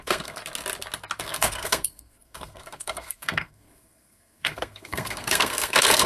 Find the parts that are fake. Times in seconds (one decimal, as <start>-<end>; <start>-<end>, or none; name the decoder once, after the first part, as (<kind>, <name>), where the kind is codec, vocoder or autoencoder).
0.0-0.4 (codec, SNAC); 1.2-6.1